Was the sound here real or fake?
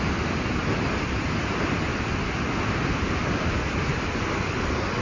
real